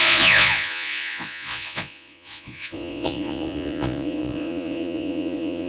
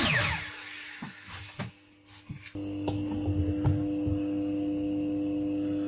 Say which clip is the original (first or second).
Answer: second